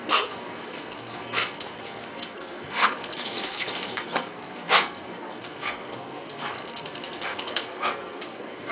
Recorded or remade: remade